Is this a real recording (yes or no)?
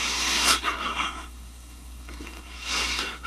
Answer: no